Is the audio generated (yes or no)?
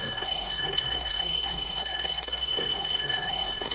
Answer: yes